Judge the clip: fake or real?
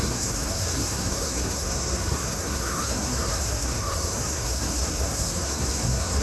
fake